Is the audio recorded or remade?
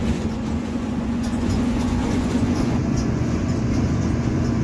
remade